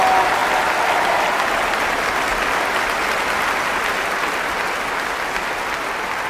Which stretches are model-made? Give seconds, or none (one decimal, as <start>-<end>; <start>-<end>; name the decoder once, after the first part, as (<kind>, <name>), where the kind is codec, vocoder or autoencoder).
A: none